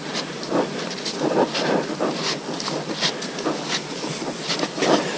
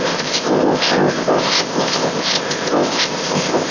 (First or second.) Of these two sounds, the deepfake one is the second